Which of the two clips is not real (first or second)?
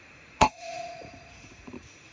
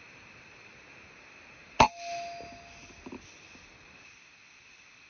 first